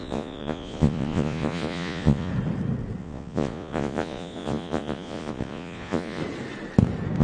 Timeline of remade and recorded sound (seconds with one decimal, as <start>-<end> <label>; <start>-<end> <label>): 0.0-2.3 remade; 2.3-3.0 recorded; 3.0-6.2 remade; 6.2-7.2 recorded

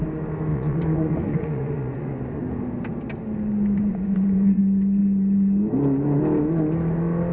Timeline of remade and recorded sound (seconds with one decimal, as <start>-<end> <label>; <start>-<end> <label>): 0.0-0.5 recorded; 0.5-2.4 remade; 2.4-3.8 recorded; 3.8-4.6 remade; 4.6-7.3 recorded

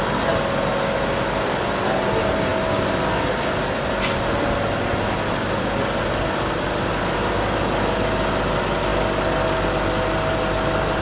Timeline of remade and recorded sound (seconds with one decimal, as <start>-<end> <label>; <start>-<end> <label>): 0.0-11.0 recorded

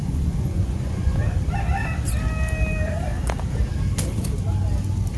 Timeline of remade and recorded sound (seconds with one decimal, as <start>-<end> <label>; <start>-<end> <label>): 0.0-1.2 remade; 1.2-5.2 recorded

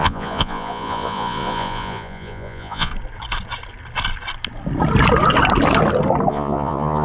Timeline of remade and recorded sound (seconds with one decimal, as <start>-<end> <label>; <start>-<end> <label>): 0.0-2.9 remade; 2.9-6.3 recorded; 6.3-7.0 remade

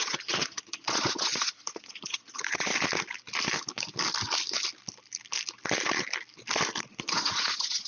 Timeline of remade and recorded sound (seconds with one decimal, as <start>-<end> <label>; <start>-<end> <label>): 0.0-2.7 remade; 2.7-6.8 recorded; 6.8-7.9 remade